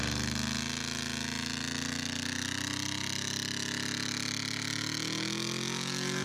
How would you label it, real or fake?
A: real